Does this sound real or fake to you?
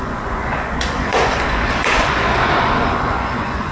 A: fake